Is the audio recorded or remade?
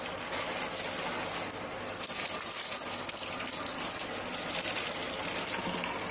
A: recorded